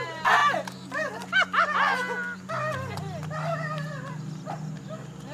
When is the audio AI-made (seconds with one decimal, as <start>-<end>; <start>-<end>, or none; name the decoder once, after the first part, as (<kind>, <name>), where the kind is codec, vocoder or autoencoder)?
none

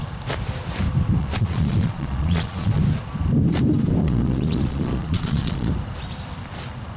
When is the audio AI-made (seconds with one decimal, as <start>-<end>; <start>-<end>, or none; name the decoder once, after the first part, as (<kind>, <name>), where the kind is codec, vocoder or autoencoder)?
1.2-2.8 (vocoder, Vocos); 4.0-5.7